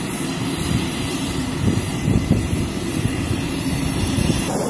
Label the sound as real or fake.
fake